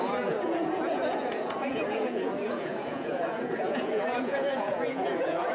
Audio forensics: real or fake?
fake